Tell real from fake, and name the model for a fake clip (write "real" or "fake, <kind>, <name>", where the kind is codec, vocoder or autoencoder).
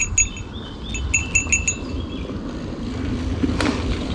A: real